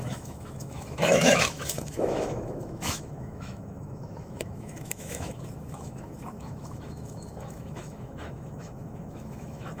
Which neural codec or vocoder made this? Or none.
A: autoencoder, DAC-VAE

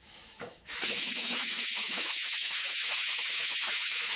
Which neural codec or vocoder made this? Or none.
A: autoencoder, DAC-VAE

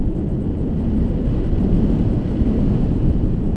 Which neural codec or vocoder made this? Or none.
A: none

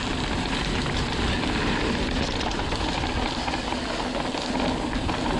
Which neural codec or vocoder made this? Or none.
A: none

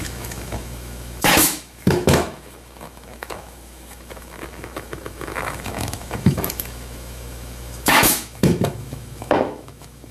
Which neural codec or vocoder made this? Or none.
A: autoencoder, DAC-VAE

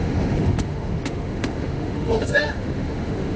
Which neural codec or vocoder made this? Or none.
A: autoencoder, DAC-VAE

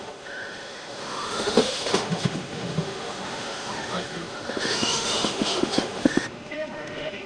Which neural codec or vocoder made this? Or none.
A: autoencoder, DAC-VAE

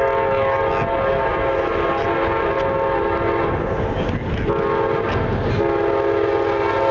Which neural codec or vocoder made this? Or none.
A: none